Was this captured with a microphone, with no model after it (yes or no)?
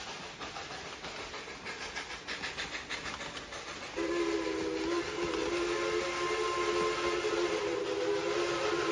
yes